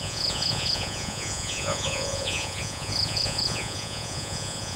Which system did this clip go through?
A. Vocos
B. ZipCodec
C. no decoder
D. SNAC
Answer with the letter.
A